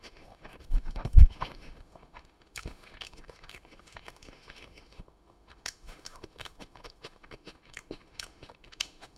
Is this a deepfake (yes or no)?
yes